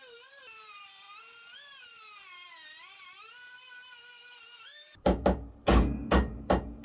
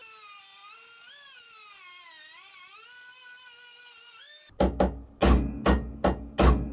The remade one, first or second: first